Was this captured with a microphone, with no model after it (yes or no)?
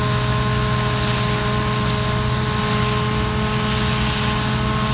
yes